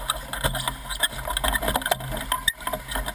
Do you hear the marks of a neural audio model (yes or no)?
no